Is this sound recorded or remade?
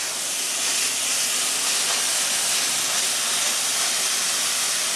recorded